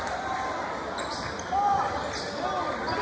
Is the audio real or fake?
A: real